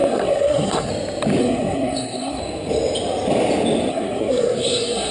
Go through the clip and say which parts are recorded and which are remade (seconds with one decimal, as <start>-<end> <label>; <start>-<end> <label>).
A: 0.0-0.9 remade; 0.9-1.4 recorded; 1.4-2.4 remade; 2.4-3.9 recorded; 3.9-5.1 remade

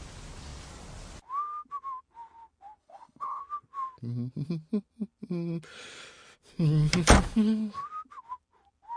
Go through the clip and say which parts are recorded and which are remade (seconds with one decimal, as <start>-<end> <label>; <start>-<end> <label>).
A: 0.0-2.8 recorded; 2.8-3.4 remade; 3.4-9.0 recorded

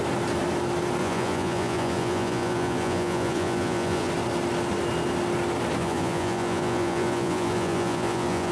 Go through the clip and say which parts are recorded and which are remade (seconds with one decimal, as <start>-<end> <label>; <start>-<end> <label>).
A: 0.0-1.0 recorded; 1.0-4.1 remade; 4.1-5.8 recorded; 5.8-8.5 remade

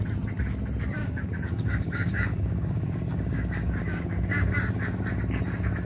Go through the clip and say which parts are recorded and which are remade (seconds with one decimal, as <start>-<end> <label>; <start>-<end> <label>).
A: 0.0-1.0 recorded; 1.0-4.5 remade; 4.5-5.8 recorded

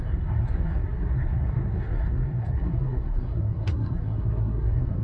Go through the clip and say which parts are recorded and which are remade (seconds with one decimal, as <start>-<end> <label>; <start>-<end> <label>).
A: 0.0-5.0 remade

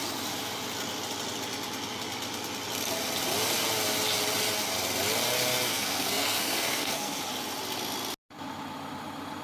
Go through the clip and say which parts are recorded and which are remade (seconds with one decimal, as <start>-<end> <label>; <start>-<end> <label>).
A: 0.0-5.7 recorded; 5.7-7.2 remade; 7.2-9.4 recorded

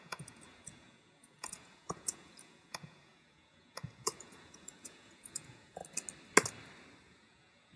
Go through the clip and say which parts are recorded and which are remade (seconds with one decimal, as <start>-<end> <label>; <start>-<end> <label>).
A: 0.0-5.8 remade; 5.8-7.0 recorded; 7.0-7.8 remade

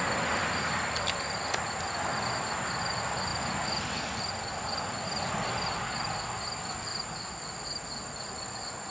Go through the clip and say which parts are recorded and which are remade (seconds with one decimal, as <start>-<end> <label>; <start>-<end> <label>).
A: 0.0-8.9 recorded